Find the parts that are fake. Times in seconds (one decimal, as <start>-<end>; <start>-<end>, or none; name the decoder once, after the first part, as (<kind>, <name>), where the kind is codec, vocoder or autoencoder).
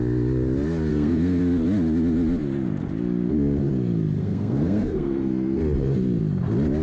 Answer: 0.9-1.4 (codec, SNAC); 4.2-5.6